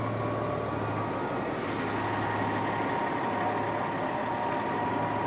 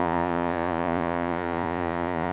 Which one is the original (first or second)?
first